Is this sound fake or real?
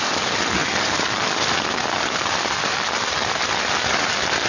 real